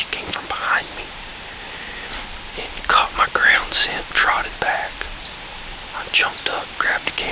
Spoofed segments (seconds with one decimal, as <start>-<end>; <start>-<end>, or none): none